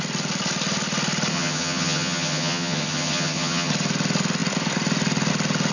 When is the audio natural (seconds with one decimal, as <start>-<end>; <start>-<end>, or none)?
0.0-1.3; 3.7-5.7